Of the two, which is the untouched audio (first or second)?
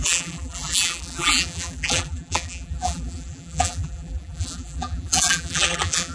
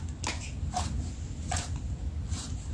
second